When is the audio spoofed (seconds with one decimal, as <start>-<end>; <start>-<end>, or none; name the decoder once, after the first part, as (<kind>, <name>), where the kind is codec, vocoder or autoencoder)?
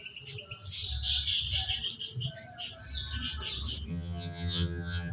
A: 3.9-5.1 (vocoder, HiFi-GAN)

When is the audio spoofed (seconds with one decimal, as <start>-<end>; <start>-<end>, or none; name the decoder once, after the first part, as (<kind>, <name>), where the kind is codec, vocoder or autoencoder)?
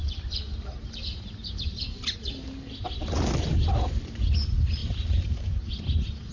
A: 4.8-5.7 (vocoder, BigVGAN v2)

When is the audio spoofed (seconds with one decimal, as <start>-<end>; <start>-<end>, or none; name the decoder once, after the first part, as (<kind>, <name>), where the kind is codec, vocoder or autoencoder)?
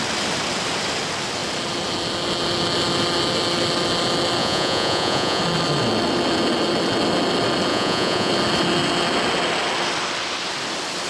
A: 4.4-5.4 (vocoder, Vocos); 7.7-8.3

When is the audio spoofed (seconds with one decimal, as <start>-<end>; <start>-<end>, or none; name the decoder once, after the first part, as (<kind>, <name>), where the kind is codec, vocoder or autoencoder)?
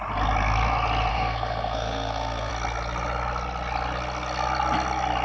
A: 1.1-2.5 (codec, SNAC)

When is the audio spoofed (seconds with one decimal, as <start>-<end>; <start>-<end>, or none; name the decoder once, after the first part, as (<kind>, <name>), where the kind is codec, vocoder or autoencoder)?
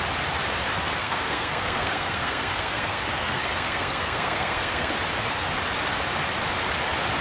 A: 1.0-4.9 (codec, SNAC)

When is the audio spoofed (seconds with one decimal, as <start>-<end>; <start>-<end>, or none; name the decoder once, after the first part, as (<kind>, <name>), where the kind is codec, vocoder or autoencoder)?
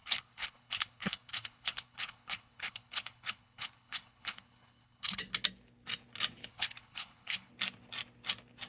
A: 0.0-5.2 (codec, HILCodec); 6.5-7.5